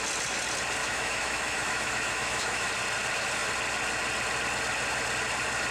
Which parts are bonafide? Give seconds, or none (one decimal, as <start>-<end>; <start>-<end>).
0.0-0.8; 2.7-5.7